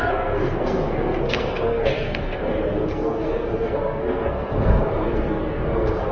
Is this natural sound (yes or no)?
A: no